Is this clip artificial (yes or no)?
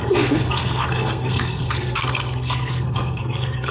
yes